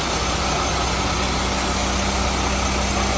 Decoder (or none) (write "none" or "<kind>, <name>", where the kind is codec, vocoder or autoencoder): none